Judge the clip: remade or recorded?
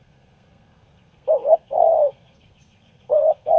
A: remade